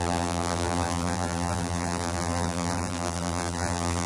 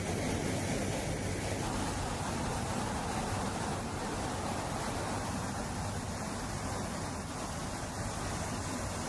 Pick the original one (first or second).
second